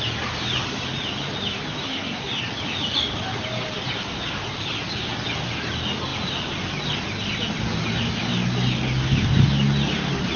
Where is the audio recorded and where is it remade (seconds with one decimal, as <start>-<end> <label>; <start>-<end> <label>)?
0.0-1.8 recorded; 1.8-2.3 remade; 2.3-10.4 recorded